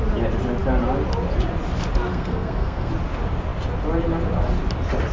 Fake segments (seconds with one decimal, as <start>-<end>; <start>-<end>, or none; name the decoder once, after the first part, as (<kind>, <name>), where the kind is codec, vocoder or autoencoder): 2.1-2.9 (codec, SNAC)